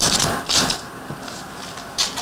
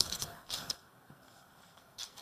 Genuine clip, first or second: first